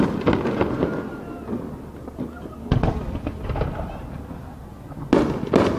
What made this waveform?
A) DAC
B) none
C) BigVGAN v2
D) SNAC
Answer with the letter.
B